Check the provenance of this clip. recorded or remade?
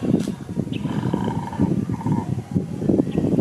recorded